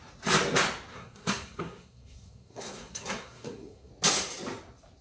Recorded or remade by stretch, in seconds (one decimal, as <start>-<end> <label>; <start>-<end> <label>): 0.0-0.9 recorded; 0.9-3.9 remade; 3.9-5.0 recorded